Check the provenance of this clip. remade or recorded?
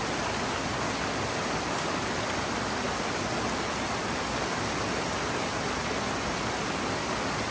recorded